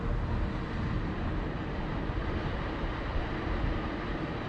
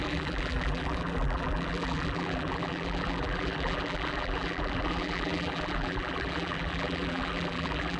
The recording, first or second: first